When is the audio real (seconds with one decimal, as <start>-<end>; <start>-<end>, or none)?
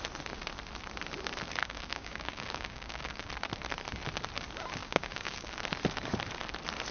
0.0-1.6; 3.3-4.8; 5.5-6.9